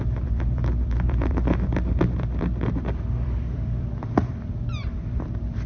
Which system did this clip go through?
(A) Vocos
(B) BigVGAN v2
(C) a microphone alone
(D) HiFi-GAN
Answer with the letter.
B